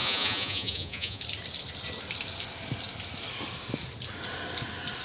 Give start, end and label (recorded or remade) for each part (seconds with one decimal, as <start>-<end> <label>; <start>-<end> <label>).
0.0-1.2 remade; 1.2-5.0 recorded